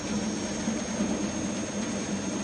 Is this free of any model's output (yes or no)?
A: yes